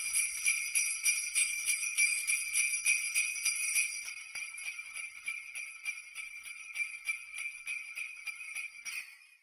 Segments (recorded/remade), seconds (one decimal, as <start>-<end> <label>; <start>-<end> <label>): 0.0-1.4 recorded; 1.4-2.3 remade; 2.3-9.4 recorded